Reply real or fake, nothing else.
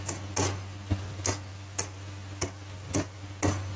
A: real